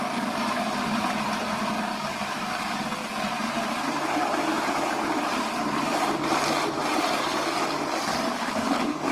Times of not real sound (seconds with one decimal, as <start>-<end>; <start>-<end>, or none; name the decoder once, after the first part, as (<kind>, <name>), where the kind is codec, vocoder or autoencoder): 1.9-2.6 (codec, DAC); 8.1-9.1